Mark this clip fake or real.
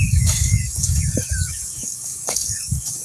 fake